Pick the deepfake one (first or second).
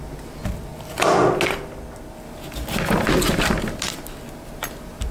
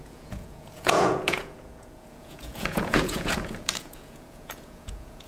second